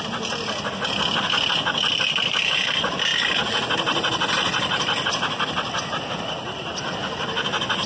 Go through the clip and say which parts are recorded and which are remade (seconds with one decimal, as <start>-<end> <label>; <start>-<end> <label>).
0.0-7.9 recorded